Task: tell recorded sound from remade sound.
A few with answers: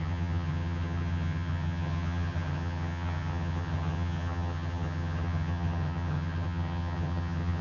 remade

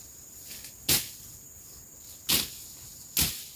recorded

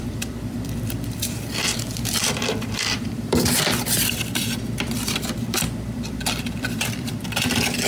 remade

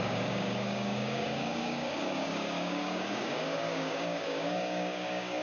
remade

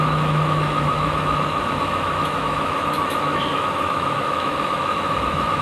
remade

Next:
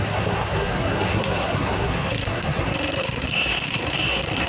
remade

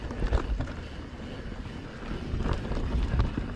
recorded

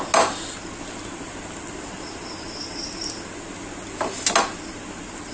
recorded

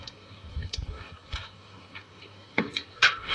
remade